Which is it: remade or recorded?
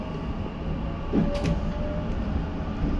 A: recorded